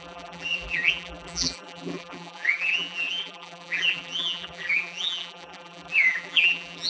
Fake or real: fake